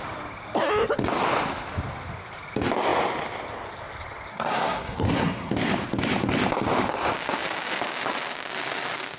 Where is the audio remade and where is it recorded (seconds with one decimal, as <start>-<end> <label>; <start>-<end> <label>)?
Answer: 0.0-4.3 recorded; 4.3-5.5 remade; 5.5-9.2 recorded